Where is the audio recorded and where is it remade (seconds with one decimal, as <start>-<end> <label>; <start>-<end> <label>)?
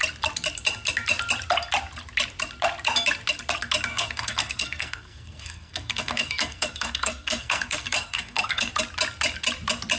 0.0-3.9 recorded; 3.9-8.7 remade; 8.7-10.0 recorded